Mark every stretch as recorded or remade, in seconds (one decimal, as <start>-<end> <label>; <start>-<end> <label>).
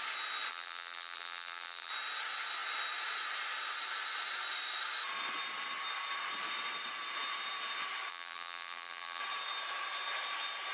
0.0-0.5 recorded; 0.5-1.9 remade; 1.9-8.1 recorded; 8.1-9.2 remade; 9.2-10.7 recorded